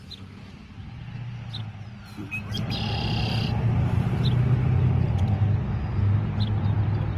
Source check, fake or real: real